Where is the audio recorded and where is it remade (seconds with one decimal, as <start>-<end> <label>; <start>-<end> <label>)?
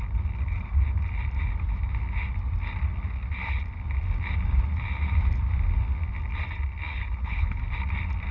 0.0-6.9 recorded; 6.9-7.6 remade; 7.6-8.3 recorded